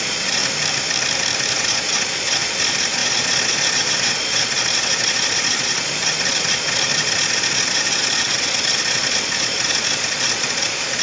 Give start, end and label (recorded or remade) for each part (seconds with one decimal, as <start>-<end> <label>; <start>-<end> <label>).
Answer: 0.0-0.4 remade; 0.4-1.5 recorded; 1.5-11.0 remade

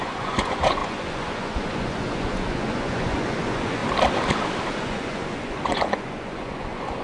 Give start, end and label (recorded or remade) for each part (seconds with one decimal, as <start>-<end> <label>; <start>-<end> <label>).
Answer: 0.0-3.8 remade; 3.8-4.8 recorded; 4.8-7.0 remade

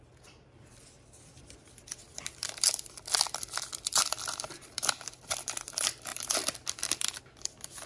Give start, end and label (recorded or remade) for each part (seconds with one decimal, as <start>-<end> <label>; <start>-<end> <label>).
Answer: 0.0-7.9 remade